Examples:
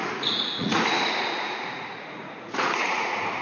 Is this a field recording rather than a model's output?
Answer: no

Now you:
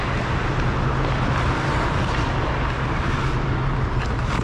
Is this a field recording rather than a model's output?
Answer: yes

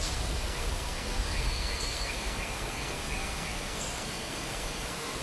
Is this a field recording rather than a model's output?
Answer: no